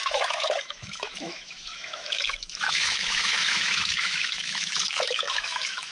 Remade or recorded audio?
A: remade